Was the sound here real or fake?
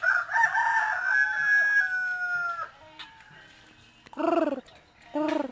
real